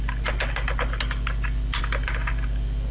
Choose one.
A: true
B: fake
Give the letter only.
A